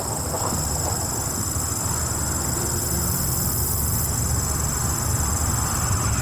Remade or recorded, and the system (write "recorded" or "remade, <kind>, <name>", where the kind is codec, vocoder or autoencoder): recorded